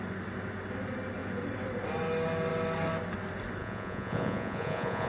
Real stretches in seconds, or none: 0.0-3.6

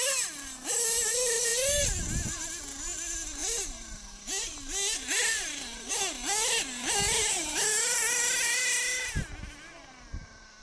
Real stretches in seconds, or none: 0.0-10.6